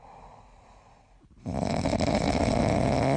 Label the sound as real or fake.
real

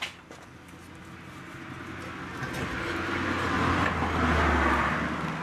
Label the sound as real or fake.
real